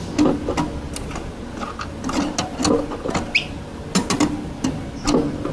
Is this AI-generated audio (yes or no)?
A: no